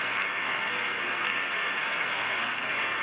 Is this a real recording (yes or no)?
no